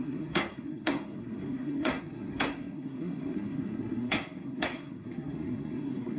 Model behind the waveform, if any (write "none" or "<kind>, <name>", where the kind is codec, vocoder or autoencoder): codec, SNAC